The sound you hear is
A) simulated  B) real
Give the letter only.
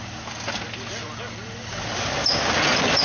B